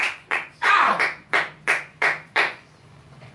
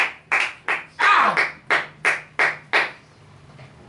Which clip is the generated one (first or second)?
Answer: first